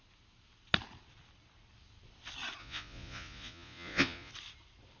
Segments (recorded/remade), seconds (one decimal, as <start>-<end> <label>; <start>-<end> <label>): 0.0-2.6 recorded; 2.6-4.3 remade; 4.3-5.0 recorded

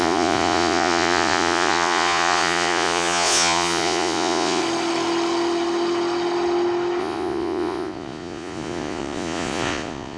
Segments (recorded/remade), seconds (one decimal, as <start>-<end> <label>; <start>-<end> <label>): 0.0-4.6 remade; 4.6-7.0 recorded; 7.0-10.2 remade

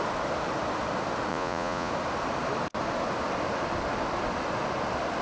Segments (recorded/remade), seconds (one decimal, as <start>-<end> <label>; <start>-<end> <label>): 0.0-1.3 recorded; 1.3-1.9 remade; 1.9-5.2 recorded

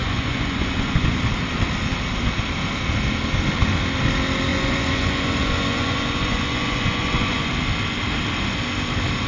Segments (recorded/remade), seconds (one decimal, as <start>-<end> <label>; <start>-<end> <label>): 0.0-1.2 remade; 1.2-4.5 recorded; 4.5-7.5 remade; 7.5-9.3 recorded

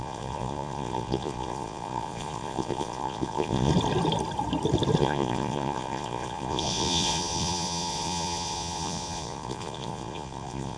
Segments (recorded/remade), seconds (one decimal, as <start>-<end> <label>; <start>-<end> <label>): 0.0-3.7 remade; 3.7-5.0 recorded; 5.0-10.8 remade

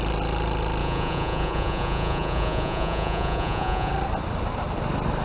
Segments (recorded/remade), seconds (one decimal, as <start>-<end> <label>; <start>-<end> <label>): 0.0-0.8 recorded; 0.8-3.9 remade; 3.9-5.2 recorded